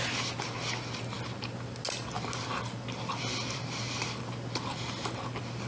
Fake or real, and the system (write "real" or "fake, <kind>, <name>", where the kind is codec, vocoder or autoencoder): real